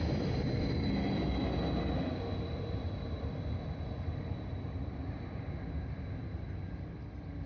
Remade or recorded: recorded